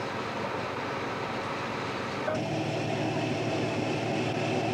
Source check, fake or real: real